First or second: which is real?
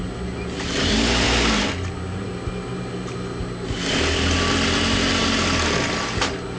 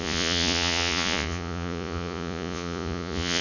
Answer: first